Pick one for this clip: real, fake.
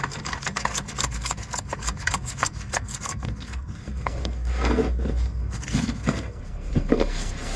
fake